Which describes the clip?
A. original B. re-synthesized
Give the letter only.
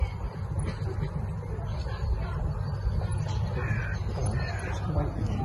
A